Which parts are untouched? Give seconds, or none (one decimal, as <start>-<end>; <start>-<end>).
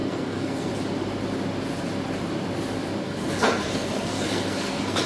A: 0.7-3.0